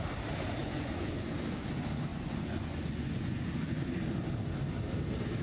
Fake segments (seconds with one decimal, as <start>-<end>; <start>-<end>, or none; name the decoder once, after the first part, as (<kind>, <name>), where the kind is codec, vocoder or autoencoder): 0.6-1.7 (vocoder, Vocos); 2.1-3.8